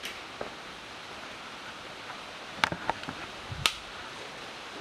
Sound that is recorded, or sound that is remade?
recorded